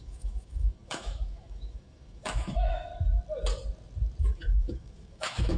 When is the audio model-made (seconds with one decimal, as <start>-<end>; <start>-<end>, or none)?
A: 0.0-2.9; 4.2-5.6